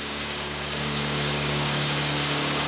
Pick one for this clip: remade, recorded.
remade